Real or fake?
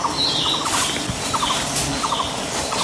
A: real